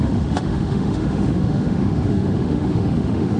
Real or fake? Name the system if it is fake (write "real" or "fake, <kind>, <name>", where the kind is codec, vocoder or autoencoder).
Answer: fake, autoencoder, DAC-VAE